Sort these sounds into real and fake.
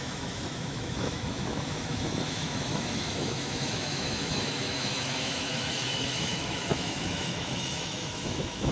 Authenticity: fake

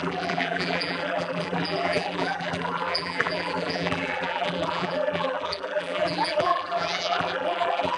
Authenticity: fake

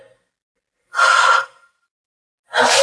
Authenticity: real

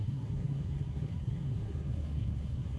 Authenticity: fake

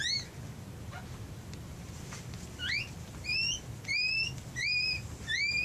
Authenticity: real